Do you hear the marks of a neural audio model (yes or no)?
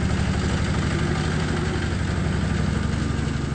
no